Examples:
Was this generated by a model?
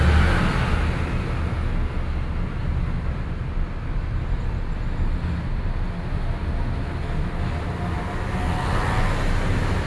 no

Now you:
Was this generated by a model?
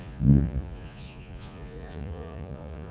yes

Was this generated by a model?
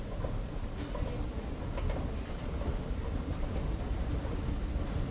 no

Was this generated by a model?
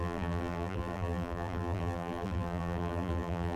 yes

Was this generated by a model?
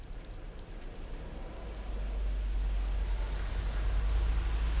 no